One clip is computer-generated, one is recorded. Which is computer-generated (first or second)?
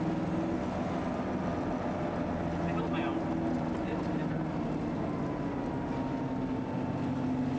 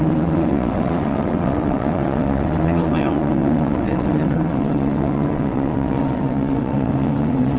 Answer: second